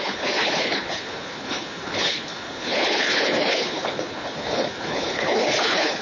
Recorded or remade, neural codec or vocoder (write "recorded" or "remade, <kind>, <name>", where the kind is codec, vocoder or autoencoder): remade, codec, HILCodec